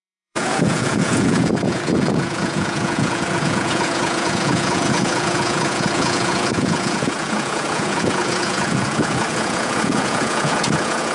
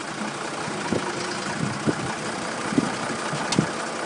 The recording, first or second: second